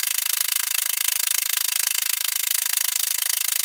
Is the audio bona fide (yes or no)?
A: no